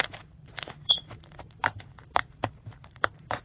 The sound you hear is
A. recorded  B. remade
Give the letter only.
B